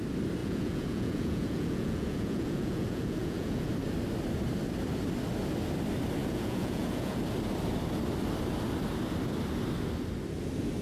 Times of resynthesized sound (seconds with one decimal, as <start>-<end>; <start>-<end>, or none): 0.4-3.7; 6.2-7.2

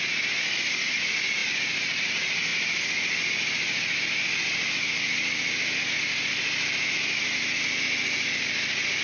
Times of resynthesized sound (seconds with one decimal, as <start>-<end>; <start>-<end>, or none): none

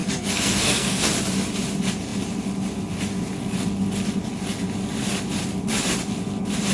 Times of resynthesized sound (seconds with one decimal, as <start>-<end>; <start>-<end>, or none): 0.0-1.1

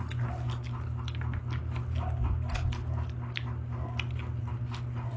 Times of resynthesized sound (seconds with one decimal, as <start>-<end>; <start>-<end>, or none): none

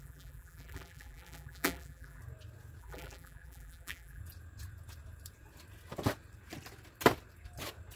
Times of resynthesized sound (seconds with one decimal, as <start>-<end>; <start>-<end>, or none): 0.0-2.2; 2.8-4.2